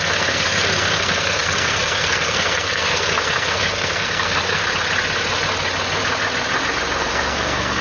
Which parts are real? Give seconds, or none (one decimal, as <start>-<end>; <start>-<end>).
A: 4.6-7.0